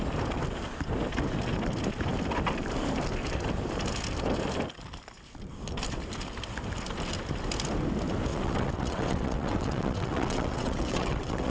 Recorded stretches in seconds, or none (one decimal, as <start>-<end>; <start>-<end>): 0.0-8.3